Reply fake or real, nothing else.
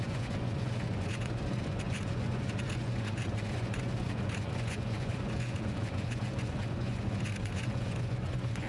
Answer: fake